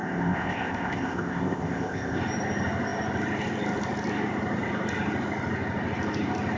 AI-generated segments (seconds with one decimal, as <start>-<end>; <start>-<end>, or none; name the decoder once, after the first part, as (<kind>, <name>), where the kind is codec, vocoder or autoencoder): 0.0-2.2 (codec, ZipCodec)